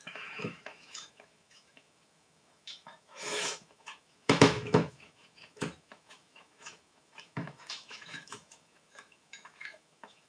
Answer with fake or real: fake